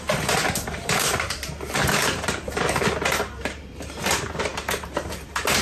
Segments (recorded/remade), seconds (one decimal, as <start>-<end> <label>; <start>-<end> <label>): 0.0-5.6 remade